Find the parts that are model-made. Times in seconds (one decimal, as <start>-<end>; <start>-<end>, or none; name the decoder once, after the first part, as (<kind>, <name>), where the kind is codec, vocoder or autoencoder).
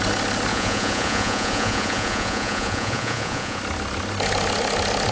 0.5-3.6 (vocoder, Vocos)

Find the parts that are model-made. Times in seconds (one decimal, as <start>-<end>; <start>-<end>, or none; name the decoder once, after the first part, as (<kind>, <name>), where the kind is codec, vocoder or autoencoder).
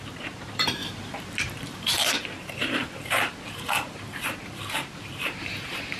0.0-6.0 (vocoder, BigVGAN v2)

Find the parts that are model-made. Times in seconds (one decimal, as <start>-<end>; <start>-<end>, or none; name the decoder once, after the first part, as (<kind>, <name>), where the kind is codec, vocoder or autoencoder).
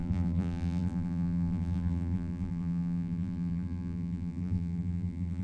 0.0-5.4 (vocoder, BigVGAN v2)